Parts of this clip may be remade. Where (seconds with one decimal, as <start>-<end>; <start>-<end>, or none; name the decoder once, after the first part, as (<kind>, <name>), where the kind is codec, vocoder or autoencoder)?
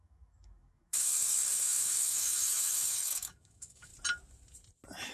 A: 0.0-3.9 (autoencoder, DAC-VAE)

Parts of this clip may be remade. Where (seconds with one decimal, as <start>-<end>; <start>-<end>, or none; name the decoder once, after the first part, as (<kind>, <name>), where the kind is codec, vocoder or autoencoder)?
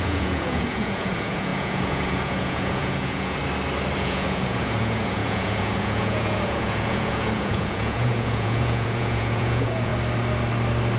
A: 0.0-3.4 (vocoder, Vocos); 4.0-9.9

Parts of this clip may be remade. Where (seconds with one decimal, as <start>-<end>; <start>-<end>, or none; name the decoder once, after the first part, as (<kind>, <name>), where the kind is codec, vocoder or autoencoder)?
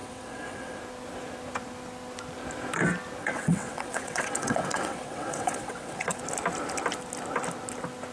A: 0.0-0.8 (vocoder, WaveNeXt); 3.2-6.2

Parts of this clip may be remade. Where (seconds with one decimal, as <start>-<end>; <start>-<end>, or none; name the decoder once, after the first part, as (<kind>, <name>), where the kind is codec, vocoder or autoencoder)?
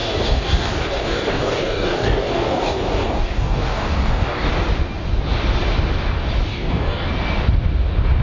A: 0.0-4.5 (codec, DAC); 6.5-7.1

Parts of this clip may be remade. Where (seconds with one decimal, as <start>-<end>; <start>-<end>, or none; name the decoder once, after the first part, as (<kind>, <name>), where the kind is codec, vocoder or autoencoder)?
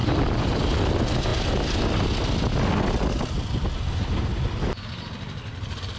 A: 0.0-0.9 (vocoder, BigVGAN v2)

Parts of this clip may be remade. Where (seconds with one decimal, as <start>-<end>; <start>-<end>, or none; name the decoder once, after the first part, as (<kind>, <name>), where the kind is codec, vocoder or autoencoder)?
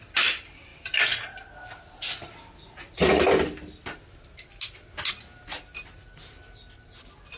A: none